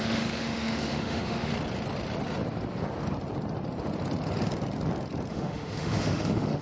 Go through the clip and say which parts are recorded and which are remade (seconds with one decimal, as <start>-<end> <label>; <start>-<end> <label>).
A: 0.0-1.5 remade; 1.5-5.3 recorded; 5.3-6.6 remade